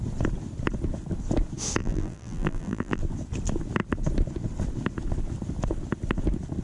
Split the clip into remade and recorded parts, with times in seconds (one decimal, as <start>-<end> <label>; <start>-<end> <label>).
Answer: 0.0-1.8 recorded; 1.8-3.0 remade; 3.0-6.6 recorded